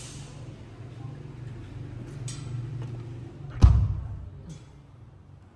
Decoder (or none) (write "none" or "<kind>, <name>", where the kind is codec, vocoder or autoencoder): none